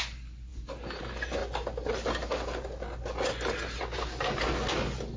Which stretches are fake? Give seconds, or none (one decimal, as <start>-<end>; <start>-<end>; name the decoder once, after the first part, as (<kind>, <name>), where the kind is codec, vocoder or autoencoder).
none